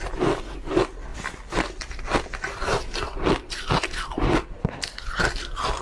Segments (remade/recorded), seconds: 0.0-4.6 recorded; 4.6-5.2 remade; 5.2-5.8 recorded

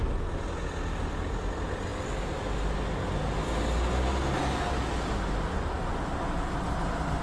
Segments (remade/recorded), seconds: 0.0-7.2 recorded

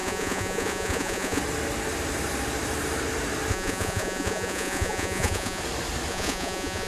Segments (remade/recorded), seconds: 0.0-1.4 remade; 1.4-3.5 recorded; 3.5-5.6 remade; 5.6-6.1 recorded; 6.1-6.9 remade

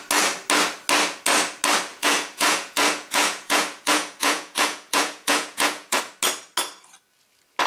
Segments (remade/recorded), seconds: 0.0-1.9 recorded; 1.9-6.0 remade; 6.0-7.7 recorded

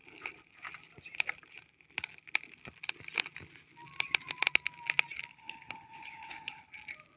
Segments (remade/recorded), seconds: 0.0-5.3 recorded; 5.3-6.7 remade; 6.7-7.2 recorded

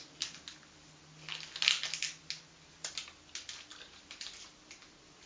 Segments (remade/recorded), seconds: 0.0-3.7 recorded; 3.7-4.5 remade; 4.5-5.3 recorded